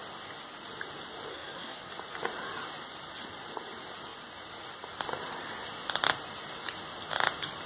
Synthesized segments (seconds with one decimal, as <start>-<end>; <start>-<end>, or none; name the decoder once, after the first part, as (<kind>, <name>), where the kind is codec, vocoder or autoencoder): 1.3-1.9 (codec, SNAC)

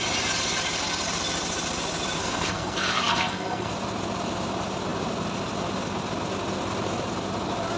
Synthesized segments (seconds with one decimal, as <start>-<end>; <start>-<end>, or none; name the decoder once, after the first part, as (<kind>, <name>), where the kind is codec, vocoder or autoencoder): 2.2-3.7 (codec, SNAC)

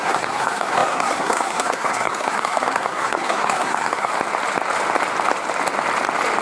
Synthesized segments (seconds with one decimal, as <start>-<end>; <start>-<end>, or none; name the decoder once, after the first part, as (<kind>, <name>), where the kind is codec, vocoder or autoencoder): 0.0-4.1 (codec, SNAC)

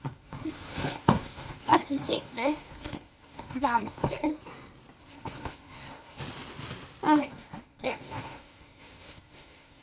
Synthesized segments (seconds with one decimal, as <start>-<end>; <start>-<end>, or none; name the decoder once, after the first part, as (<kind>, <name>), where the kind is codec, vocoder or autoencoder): 0.0-4.3 (codec, SNAC); 5.0-6.2; 7.2-9.8

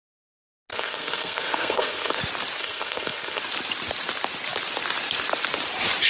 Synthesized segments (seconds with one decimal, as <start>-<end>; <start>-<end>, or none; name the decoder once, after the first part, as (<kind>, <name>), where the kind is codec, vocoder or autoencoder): 0.7-2.2 (codec, SNAC); 2.6-3.4

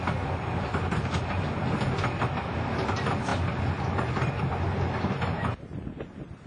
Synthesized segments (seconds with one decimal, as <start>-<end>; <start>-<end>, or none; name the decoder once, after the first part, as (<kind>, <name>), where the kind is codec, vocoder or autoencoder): none